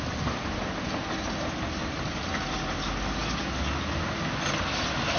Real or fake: real